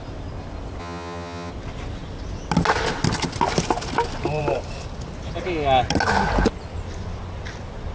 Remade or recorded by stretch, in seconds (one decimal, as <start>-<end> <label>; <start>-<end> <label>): 0.0-0.8 recorded; 0.8-1.5 remade; 1.5-7.9 recorded